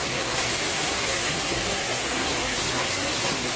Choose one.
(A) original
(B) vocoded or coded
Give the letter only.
B